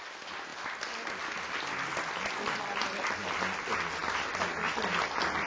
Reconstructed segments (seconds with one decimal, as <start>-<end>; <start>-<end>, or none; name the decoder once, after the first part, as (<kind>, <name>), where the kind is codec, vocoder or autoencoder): none